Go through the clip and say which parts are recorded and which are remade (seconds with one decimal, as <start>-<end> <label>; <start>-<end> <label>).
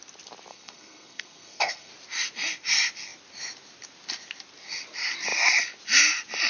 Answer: 0.0-0.5 recorded; 0.5-1.9 remade; 1.9-6.5 recorded